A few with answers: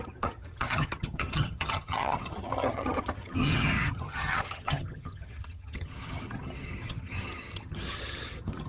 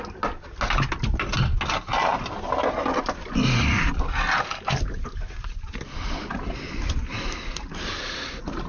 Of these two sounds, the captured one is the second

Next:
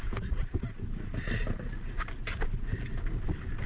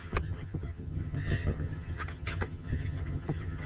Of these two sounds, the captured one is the first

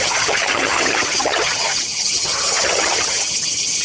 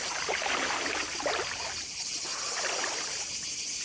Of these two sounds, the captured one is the second